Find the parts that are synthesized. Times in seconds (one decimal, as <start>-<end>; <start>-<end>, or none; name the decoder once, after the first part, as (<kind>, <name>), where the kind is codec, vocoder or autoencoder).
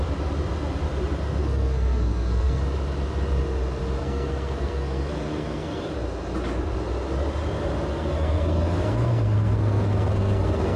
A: 1.4-2.6 (codec, SNAC); 4.0-5.8; 7.9-10.8